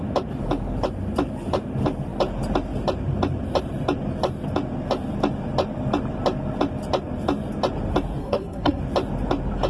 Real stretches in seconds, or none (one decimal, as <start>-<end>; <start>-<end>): 0.0-8.2; 8.8-9.7